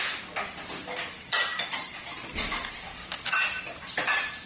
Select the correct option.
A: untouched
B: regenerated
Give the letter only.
A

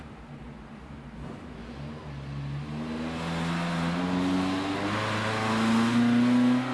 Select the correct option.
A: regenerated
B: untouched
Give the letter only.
B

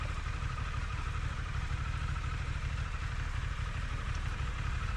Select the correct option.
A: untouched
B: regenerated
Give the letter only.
B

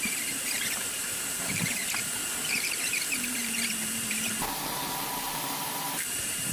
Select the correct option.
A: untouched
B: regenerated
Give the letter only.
B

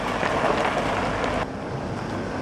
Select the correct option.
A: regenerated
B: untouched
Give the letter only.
B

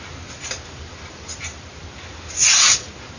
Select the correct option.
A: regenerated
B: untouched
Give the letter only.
B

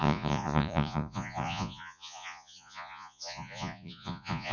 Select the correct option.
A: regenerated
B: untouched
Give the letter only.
A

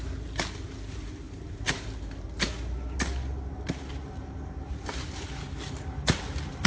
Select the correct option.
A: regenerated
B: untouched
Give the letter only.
B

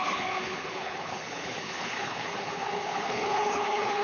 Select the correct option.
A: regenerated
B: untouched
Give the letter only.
A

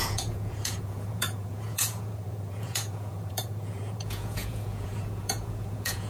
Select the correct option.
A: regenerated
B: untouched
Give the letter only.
A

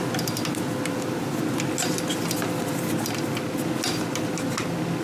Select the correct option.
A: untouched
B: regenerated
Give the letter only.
A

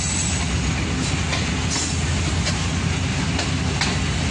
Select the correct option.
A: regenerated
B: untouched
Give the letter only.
B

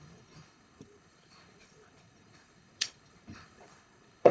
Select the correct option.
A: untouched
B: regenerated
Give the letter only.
B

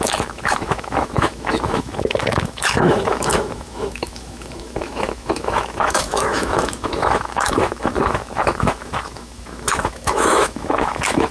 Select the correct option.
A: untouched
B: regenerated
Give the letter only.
B